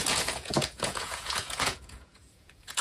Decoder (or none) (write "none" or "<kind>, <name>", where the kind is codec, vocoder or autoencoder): vocoder, Vocos